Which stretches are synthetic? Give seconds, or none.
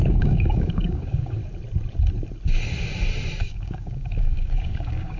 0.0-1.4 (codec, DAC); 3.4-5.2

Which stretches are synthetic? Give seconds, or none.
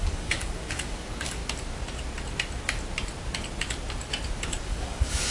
0.0-1.4 (codec, DAC); 4.6-5.3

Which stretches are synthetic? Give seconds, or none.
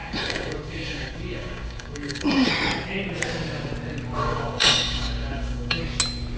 0.0-2.5 (codec, DAC); 4.2-5.8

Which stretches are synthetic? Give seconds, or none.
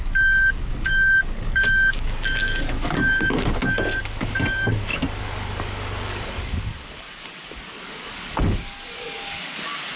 0.0-10.0 (codec, DAC)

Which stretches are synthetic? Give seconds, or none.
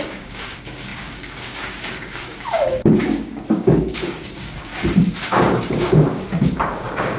0.0-4.7 (codec, DAC); 5.2-7.2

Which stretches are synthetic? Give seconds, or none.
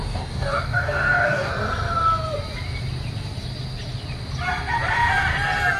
0.0-1.5 (codec, DAC)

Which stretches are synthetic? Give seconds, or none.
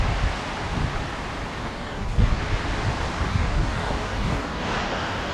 1.6-2.4 (codec, DAC); 3.3-5.3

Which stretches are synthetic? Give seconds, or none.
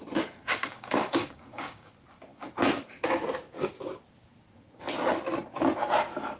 0.4-1.9 (codec, DAC)